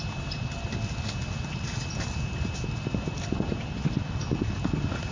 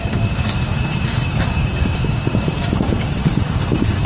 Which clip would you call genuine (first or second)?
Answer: first